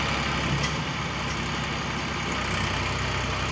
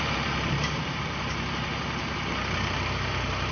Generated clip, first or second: second